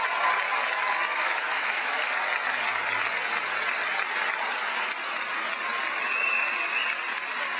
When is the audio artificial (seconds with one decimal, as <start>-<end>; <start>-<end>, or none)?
1.1-2.1